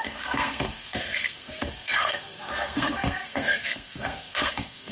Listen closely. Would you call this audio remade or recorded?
remade